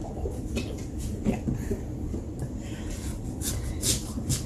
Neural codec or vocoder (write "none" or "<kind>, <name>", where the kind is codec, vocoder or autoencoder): none